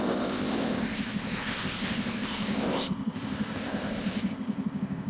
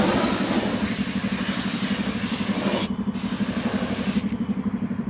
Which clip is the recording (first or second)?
second